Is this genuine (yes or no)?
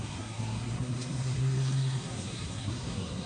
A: no